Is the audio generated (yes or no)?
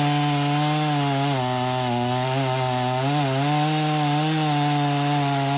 no